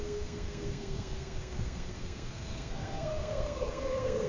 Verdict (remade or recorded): remade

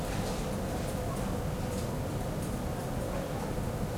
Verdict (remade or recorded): recorded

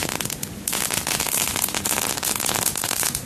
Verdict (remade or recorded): recorded